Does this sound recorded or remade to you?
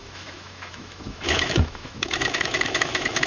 remade